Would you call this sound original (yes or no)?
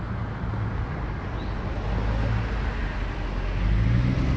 yes